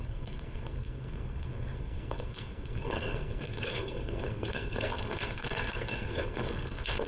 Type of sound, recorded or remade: remade